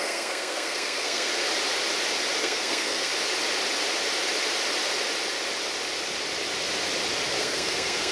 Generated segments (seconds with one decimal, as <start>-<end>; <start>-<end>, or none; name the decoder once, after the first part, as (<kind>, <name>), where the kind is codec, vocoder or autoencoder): 0.0-1.3 (codec, SNAC); 2.4-3.1; 7.4-8.1